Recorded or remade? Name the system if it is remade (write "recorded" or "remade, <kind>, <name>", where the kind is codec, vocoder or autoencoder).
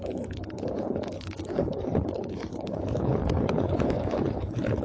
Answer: remade, codec, HILCodec